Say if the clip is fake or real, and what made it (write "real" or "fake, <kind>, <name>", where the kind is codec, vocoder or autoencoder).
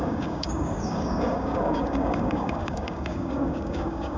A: fake, codec, DAC